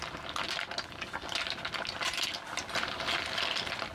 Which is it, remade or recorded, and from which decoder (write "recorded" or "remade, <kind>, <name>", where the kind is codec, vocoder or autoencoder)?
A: recorded